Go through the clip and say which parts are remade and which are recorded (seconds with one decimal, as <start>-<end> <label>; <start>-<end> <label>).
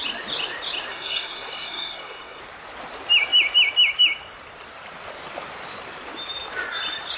0.0-0.9 recorded; 0.9-2.4 remade; 2.4-7.2 recorded